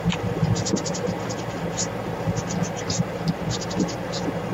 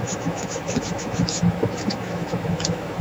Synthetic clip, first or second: second